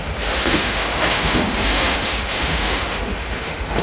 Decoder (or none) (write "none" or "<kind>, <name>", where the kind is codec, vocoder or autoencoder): autoencoder, DAC-VAE